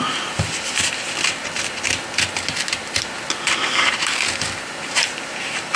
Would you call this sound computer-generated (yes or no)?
yes